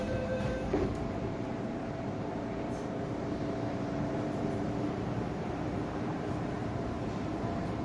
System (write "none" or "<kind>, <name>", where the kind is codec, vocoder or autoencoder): vocoder, BigVGAN v2